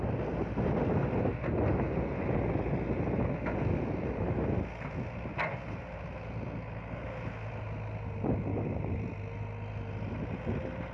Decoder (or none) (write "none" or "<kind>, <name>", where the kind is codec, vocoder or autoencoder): none